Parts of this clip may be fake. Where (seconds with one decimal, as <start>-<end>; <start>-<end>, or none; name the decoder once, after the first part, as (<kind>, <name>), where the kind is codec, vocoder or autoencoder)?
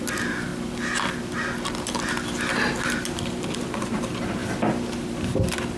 none